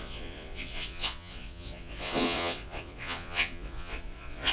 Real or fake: fake